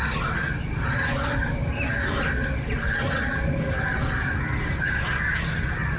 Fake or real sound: real